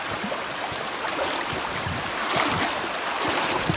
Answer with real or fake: fake